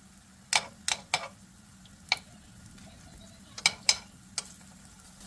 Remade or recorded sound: recorded